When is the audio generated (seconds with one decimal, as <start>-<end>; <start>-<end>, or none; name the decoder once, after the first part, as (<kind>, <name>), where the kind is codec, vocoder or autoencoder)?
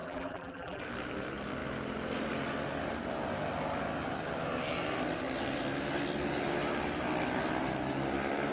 0.0-0.8 (vocoder, BigVGAN v2)